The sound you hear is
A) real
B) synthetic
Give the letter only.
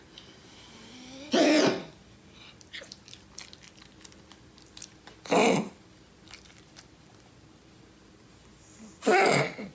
A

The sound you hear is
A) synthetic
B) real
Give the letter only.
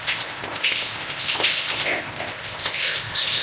A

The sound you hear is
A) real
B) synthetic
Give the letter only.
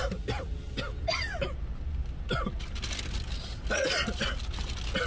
A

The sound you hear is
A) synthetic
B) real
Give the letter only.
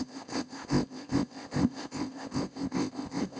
A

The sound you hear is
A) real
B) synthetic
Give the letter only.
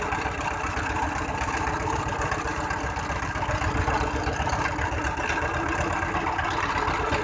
A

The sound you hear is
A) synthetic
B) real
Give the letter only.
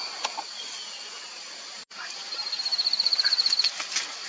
B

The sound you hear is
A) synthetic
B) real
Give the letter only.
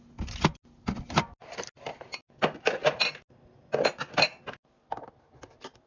B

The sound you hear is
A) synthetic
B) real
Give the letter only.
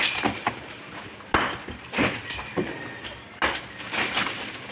B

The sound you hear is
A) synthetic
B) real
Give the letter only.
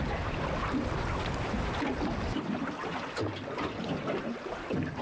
B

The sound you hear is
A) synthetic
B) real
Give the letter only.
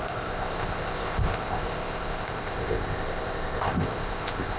A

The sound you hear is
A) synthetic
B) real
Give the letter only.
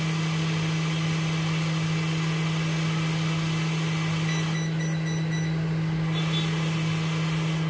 B